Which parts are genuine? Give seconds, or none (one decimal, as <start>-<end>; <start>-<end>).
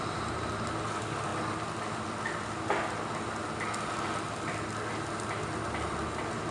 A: 0.0-6.5